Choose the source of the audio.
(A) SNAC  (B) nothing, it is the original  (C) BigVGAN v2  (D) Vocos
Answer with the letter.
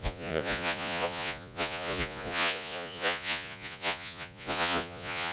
D